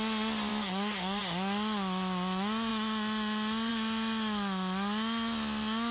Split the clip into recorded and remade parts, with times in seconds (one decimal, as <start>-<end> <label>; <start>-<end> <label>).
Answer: 0.0-0.5 recorded; 0.5-1.2 remade; 1.2-5.9 recorded